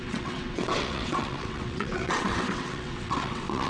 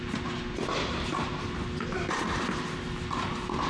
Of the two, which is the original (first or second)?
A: second